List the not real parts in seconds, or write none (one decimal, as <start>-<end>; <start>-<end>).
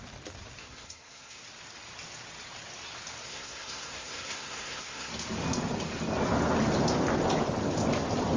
0.6-1.4; 3.2-5.1